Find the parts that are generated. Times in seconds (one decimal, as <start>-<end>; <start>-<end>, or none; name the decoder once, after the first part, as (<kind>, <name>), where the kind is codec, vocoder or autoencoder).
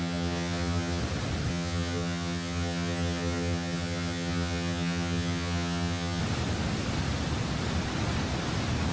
0.0-1.0 (vocoder, HiFi-GAN); 1.5-6.2